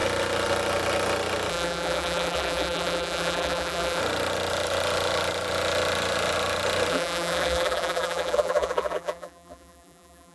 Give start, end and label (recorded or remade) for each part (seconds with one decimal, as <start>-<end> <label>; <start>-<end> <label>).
0.0-1.5 recorded; 1.5-4.0 remade; 4.0-6.9 recorded; 6.9-10.3 remade